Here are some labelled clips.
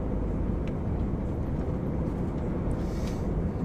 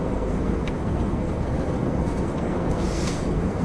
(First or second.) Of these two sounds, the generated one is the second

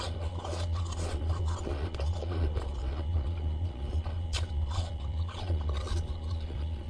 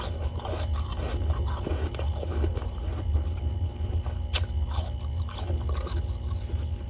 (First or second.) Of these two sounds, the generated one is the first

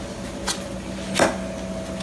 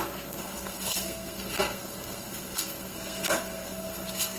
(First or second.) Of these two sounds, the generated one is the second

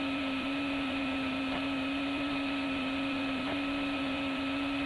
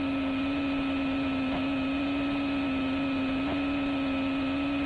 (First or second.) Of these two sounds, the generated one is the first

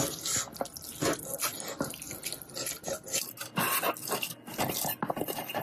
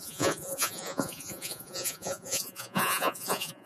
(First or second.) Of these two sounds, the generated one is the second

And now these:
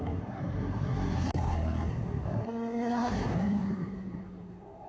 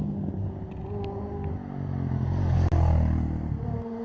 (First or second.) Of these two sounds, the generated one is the first